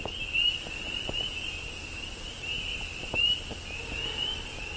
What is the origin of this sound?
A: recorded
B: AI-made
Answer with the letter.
A